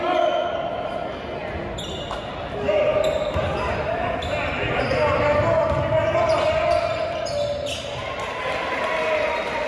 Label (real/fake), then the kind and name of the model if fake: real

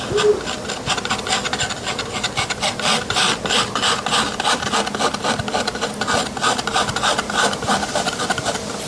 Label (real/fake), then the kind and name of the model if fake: fake, vocoder, BigVGAN v2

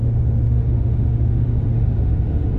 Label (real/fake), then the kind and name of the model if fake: fake, autoencoder, DAC-VAE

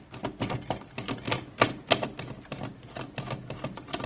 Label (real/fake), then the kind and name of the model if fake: real